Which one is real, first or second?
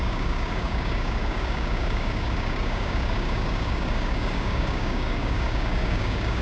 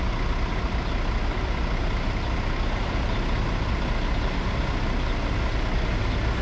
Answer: second